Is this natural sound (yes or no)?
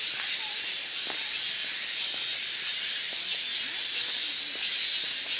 yes